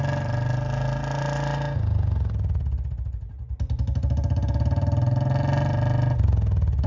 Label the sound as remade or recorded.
recorded